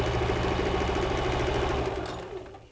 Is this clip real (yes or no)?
yes